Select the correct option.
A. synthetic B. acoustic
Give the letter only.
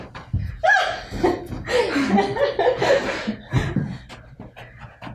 B